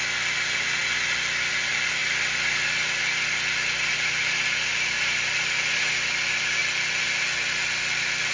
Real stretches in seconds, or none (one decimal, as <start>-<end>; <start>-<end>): 0.0-2.0; 3.0-4.7; 5.3-8.3

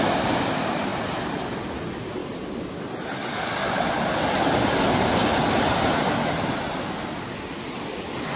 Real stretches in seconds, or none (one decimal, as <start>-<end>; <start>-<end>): 0.0-2.2; 2.8-8.4

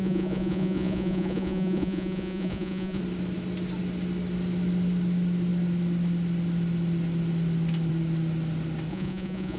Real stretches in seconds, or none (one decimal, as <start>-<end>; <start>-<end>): 3.0-8.9

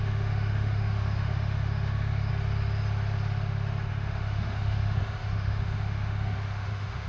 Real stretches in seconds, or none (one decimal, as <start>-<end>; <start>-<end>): 2.3-3.9